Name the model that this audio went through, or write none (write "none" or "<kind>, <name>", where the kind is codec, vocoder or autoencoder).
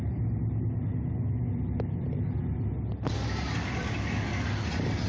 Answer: none